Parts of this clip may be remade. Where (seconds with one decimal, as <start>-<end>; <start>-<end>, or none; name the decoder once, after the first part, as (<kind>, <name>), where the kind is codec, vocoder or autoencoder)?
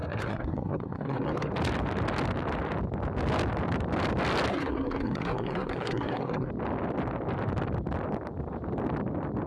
0.0-1.5 (codec, SNAC); 4.5-6.5